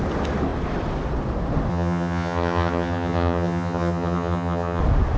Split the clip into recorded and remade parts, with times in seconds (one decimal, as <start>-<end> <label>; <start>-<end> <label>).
0.0-1.7 recorded; 1.7-4.8 remade; 4.8-5.2 recorded